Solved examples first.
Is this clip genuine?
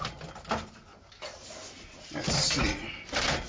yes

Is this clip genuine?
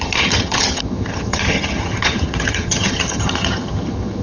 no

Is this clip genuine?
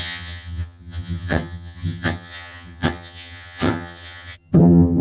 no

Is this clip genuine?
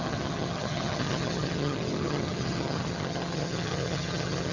no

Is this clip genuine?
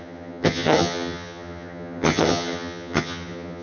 no